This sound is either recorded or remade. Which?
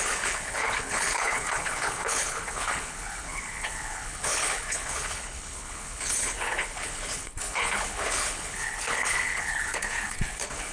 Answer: remade